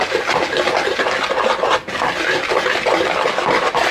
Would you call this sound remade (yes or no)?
no